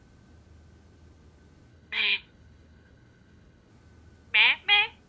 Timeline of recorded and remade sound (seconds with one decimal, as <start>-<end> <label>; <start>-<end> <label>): 0.0-1.7 recorded; 1.7-3.7 remade; 3.7-5.1 recorded